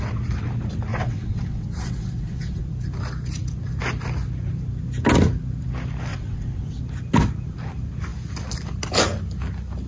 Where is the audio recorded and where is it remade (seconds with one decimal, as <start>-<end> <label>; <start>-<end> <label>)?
0.0-0.9 recorded; 0.9-2.6 remade; 2.6-6.1 recorded; 6.1-6.8 remade; 6.8-9.9 recorded